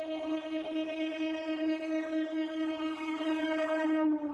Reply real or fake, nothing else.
fake